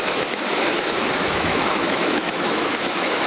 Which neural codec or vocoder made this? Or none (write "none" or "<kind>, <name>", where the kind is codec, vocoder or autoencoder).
autoencoder, DAC-VAE